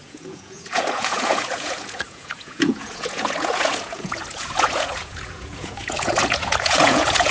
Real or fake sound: fake